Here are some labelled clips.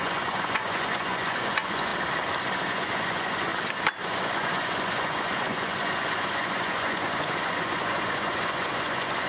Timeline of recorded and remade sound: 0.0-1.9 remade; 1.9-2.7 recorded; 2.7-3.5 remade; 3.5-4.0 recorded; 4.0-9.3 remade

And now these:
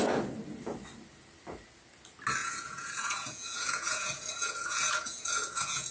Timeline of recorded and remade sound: 0.0-2.4 recorded; 2.4-5.9 remade